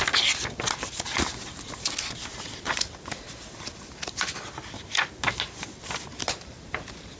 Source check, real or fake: real